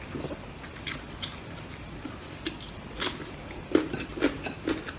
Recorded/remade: remade